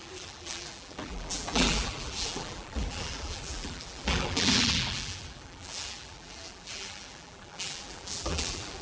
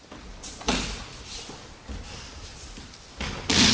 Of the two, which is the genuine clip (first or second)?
second